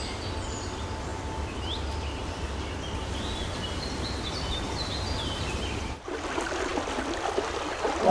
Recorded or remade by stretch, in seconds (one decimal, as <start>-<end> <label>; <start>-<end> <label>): 0.0-8.1 recorded

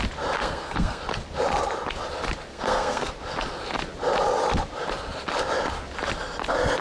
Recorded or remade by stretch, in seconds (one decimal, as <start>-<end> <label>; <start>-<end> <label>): 0.0-0.4 recorded; 0.4-1.0 remade; 1.0-2.5 recorded; 2.5-3.1 remade; 3.1-6.8 recorded

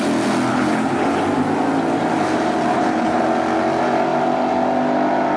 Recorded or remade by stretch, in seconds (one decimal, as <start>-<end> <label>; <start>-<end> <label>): 0.0-0.5 recorded; 0.5-1.2 remade; 1.2-2.7 recorded; 2.7-3.2 remade; 3.2-5.4 recorded